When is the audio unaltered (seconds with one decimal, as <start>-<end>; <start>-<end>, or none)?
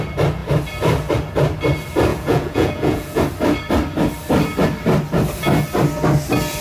0.0-2.1; 3.2-6.6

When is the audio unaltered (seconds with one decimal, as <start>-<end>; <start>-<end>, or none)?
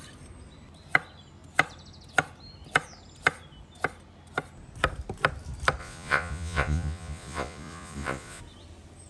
0.0-5.8; 8.4-9.1